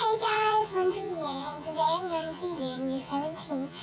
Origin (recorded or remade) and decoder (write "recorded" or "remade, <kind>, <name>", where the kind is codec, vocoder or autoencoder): remade, vocoder, Vocos